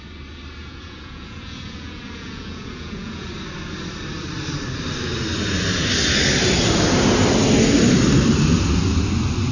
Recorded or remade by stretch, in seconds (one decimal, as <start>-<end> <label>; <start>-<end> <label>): 0.0-0.6 recorded; 0.6-3.3 remade; 3.3-9.5 recorded